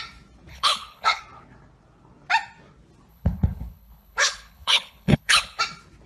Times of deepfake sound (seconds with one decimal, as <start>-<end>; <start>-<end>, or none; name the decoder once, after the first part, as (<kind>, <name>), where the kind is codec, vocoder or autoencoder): 0.5-1.2 (codec, HILCodec); 3.1-5.6